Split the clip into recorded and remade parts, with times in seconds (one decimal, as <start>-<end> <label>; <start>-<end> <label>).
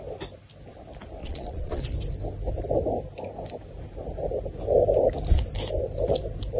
0.0-1.2 recorded; 1.2-1.8 remade; 1.8-6.6 recorded